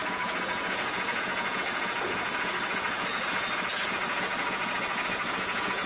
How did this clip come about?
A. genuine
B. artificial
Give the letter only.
B